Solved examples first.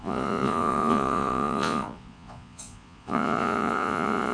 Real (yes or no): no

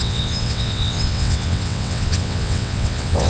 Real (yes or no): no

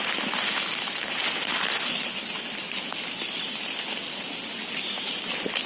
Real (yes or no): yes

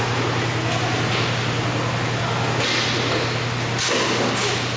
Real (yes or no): yes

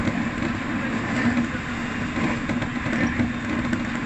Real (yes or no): yes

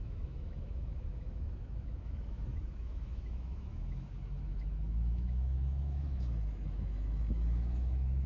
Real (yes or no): no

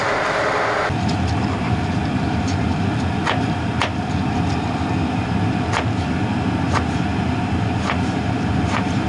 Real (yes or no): yes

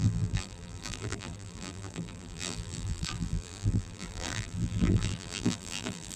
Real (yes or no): no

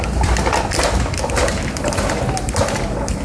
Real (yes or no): yes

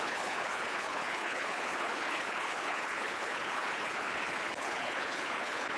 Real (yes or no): no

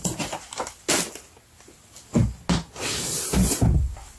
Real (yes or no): yes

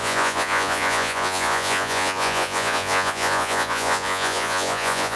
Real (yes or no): no